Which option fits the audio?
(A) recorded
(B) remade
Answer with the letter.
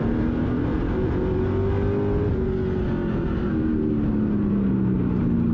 A